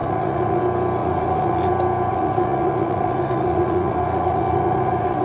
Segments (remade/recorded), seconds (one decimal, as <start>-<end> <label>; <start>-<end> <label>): 0.0-0.6 remade; 0.6-1.0 recorded; 1.0-1.7 remade; 1.7-2.1 recorded; 2.1-5.2 remade